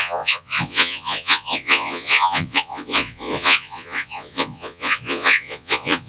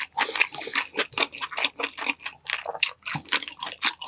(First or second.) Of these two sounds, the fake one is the first